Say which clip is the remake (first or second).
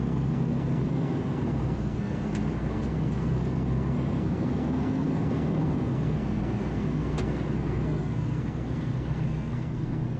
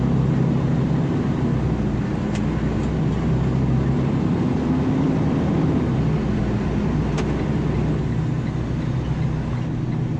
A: first